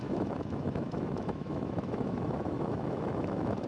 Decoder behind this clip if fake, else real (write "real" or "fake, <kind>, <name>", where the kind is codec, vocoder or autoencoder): fake, autoencoder, DAC-VAE